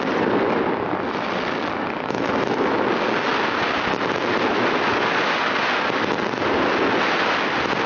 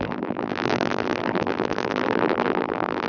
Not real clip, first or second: second